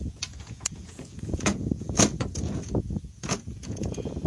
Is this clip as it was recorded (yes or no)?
no